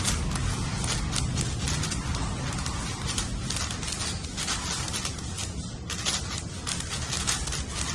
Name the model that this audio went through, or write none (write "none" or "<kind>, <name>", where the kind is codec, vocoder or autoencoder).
none